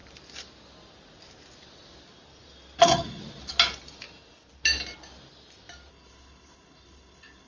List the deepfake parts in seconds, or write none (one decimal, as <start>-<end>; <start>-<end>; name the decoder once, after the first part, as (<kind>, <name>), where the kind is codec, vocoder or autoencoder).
2.8-3.2 (codec, HILCodec); 5.9-7.5